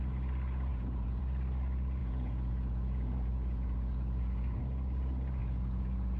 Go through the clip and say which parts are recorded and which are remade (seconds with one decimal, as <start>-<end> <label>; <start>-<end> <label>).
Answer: 0.0-0.7 recorded; 0.7-1.2 remade; 1.2-2.0 recorded; 2.0-4.6 remade; 4.6-5.4 recorded; 5.4-6.2 remade